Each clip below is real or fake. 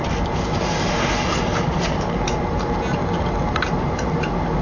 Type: real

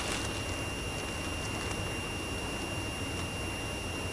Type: real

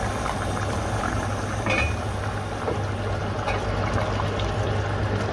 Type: real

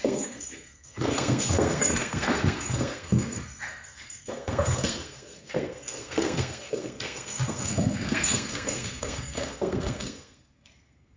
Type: fake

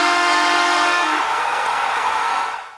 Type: fake